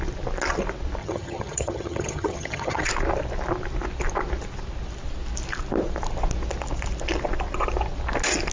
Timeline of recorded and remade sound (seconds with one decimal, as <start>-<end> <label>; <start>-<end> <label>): 0.0-1.0 recorded; 1.0-2.9 remade; 2.9-8.5 recorded

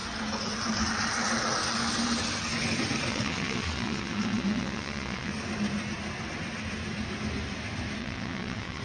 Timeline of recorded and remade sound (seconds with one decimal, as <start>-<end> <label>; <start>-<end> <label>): 0.0-3.1 recorded; 3.1-5.3 remade; 5.3-8.0 recorded; 8.0-8.8 remade